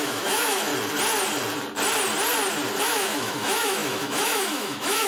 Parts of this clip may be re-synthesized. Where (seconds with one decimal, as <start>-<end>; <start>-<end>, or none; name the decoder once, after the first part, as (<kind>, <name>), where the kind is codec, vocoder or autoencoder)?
0.0-0.7 (autoencoder, DAC-VAE); 2.8-5.1